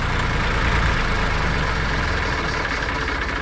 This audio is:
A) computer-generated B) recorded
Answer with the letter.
B